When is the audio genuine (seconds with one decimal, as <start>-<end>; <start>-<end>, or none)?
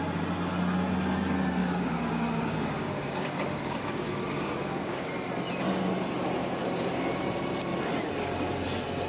0.0-1.6; 5.1-9.1